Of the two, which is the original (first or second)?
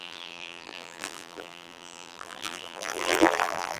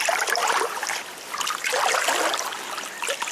second